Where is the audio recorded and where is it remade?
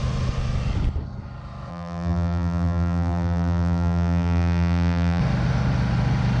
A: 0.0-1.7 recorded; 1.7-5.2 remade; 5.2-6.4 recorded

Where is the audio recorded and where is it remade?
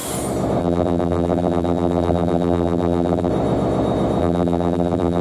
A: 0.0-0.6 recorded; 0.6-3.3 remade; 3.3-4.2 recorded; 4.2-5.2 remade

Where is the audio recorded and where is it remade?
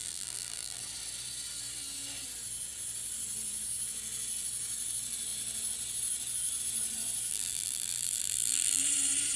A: 0.0-0.8 remade; 0.8-7.3 recorded; 7.3-8.8 remade; 8.8-9.4 recorded